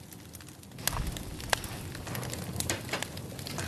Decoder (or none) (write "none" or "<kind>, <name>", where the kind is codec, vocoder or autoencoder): none